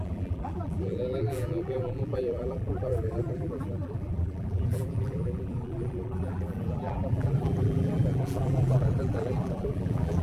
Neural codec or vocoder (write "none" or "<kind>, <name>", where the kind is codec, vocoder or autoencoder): vocoder, BigVGAN v2